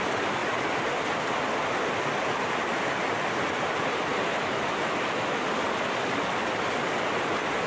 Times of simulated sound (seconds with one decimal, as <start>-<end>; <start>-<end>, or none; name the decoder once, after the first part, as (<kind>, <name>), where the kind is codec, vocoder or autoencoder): 4.4-5.4 (autoencoder, DAC-VAE)